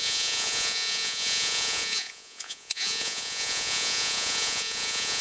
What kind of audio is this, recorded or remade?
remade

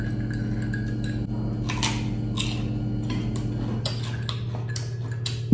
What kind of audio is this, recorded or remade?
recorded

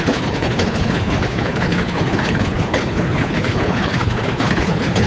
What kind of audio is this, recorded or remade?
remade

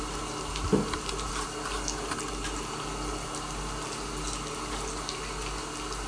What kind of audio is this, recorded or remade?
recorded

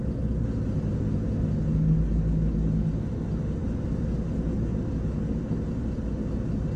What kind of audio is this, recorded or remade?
recorded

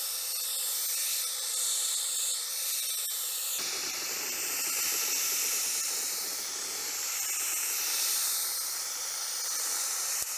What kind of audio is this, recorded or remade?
recorded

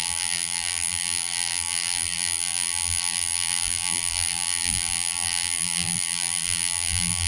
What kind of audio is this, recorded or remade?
remade